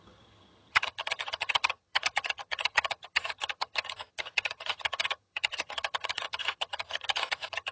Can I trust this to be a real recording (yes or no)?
no